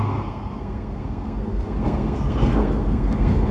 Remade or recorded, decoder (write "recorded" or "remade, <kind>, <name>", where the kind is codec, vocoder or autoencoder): remade, codec, SNAC